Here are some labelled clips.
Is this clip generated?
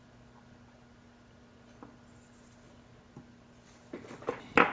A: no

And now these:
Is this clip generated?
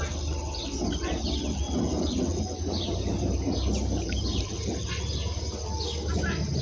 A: no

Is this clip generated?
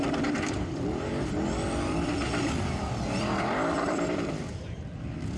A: yes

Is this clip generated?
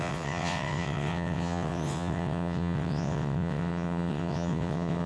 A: yes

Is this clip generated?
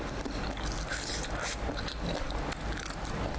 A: no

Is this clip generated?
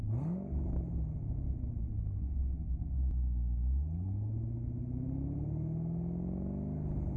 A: no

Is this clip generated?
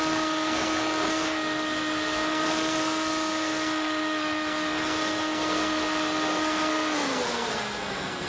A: yes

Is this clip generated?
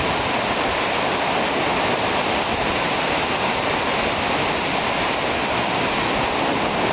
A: no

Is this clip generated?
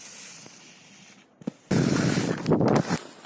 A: no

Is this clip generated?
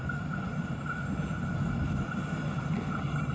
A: no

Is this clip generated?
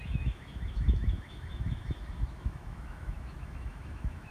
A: yes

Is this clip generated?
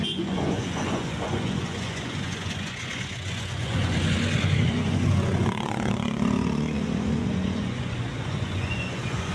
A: yes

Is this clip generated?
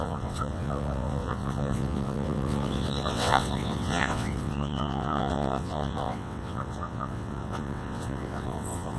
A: yes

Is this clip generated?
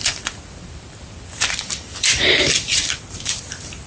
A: yes